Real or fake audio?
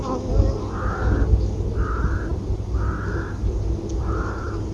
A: real